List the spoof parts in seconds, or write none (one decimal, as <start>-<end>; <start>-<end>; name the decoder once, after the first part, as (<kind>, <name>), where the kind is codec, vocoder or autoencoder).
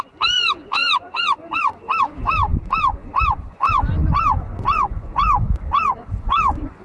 0.0-6.8 (vocoder, Vocos)